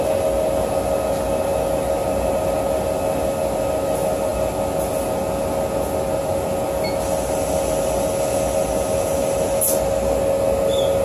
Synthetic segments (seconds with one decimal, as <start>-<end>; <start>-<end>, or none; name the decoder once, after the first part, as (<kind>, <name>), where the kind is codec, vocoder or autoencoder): none